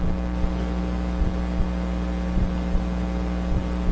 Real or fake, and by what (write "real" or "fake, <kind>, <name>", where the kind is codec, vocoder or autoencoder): real